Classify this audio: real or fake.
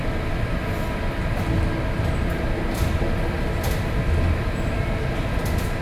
real